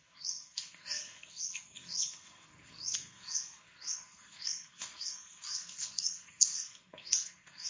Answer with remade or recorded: remade